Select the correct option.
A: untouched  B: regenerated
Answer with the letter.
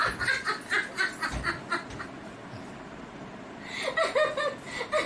A